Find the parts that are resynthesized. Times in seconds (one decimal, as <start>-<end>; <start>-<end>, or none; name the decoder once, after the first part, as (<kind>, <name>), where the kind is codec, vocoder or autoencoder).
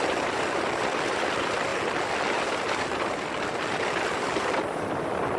none